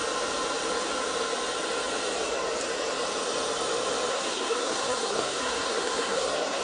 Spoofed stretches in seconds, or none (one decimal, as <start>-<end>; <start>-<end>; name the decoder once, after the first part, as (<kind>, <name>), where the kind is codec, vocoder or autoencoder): 4.1-6.6 (codec, SNAC)

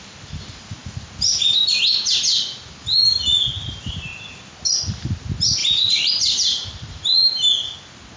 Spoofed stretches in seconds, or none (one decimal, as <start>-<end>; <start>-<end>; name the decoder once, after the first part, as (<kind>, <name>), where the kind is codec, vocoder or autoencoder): 5.6-6.1 (vocoder, BigVGAN v2)